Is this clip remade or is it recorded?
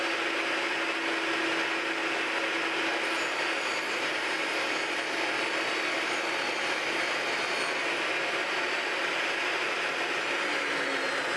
recorded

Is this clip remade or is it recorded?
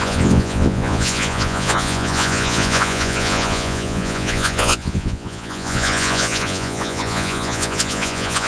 remade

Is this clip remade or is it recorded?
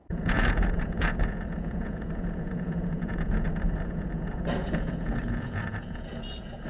remade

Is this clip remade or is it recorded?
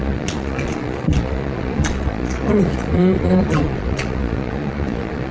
remade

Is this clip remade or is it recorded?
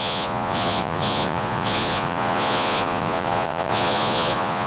remade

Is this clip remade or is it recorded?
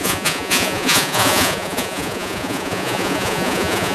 remade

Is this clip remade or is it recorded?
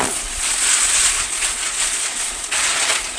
remade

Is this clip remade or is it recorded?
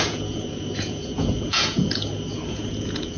remade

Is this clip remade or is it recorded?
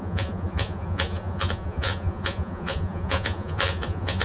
remade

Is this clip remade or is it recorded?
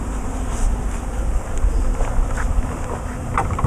recorded